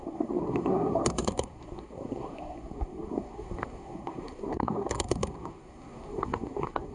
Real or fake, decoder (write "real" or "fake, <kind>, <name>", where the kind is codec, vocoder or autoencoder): fake, codec, SNAC